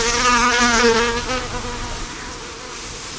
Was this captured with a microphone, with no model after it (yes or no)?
yes